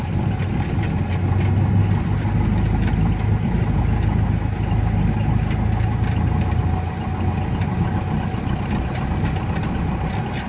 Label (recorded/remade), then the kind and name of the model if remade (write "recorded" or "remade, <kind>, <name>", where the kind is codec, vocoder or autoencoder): recorded